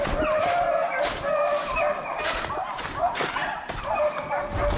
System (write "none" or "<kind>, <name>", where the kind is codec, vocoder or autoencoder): none